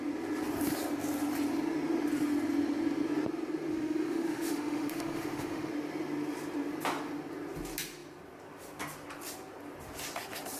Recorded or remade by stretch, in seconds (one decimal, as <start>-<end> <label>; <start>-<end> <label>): 0.0-3.7 recorded; 3.7-5.7 remade; 5.7-10.6 recorded